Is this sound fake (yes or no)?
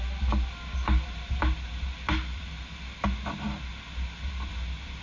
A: no